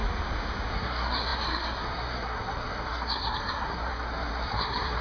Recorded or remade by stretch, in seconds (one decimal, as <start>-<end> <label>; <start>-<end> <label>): 0.0-0.7 recorded; 0.7-5.0 remade